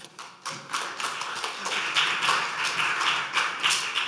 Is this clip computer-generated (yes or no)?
no